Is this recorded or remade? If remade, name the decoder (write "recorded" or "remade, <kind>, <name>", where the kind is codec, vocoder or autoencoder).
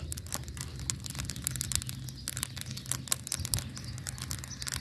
recorded